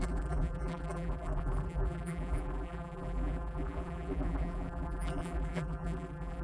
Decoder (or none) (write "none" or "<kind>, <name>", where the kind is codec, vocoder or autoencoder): vocoder, BigVGAN v2